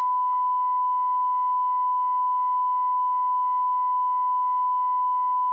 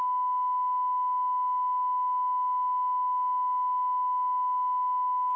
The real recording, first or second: second